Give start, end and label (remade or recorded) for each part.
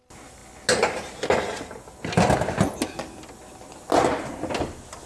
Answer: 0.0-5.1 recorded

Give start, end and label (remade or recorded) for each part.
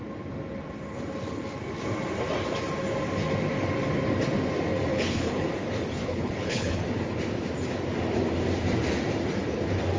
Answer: 0.0-4.9 recorded; 4.9-5.5 remade; 5.5-6.0 recorded; 6.0-6.8 remade; 6.8-10.0 recorded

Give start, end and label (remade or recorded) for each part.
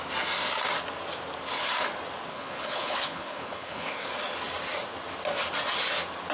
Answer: 0.0-2.3 recorded; 2.3-4.1 remade; 4.1-6.3 recorded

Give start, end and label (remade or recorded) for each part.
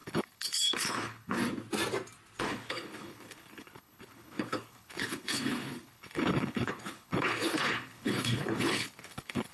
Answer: 0.0-1.4 remade; 1.4-2.4 recorded; 2.4-9.5 remade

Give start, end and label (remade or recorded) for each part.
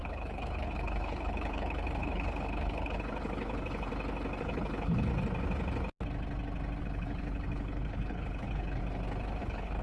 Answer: 0.0-3.9 remade; 3.9-4.4 recorded; 4.4-5.1 remade; 5.1-6.8 recorded; 6.8-8.8 remade; 8.8-9.4 recorded; 9.4-9.8 remade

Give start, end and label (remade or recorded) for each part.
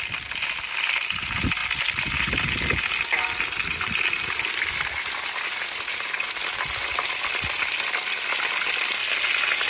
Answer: 0.0-9.7 recorded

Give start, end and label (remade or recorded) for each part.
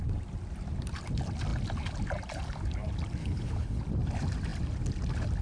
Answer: 0.0-3.2 recorded; 3.2-3.8 remade; 3.8-5.4 recorded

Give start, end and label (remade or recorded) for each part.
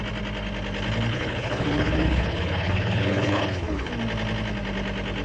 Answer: 0.0-1.1 recorded; 1.1-3.9 remade; 3.9-5.2 recorded